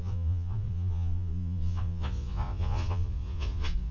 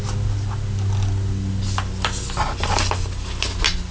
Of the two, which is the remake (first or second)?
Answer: first